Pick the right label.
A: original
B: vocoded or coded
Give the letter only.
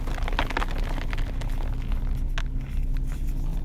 A